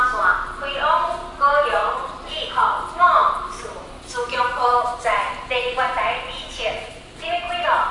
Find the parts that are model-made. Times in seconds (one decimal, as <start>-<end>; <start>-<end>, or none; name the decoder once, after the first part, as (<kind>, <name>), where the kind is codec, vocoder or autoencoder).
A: 3.2-5.0 (vocoder, BigVGAN v2)